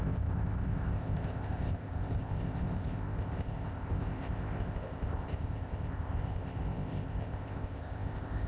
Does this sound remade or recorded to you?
remade